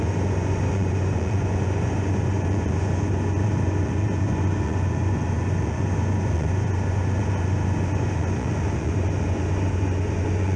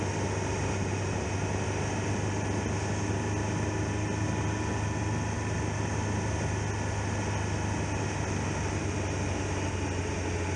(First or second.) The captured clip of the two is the second